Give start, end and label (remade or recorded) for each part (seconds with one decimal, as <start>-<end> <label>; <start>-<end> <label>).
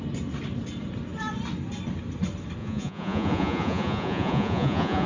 0.0-2.6 recorded; 2.6-5.1 remade